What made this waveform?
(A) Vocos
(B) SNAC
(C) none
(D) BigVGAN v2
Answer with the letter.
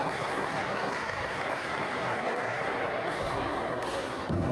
B